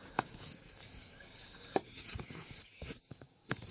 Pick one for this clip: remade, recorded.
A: remade